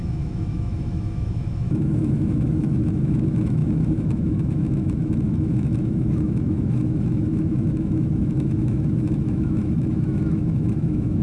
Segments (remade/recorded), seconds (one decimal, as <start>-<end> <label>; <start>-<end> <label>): 0.0-11.2 remade